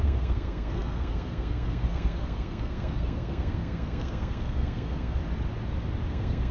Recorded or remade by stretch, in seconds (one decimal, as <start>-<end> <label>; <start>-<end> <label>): 0.0-5.2 remade; 5.2-6.1 recorded; 6.1-6.5 remade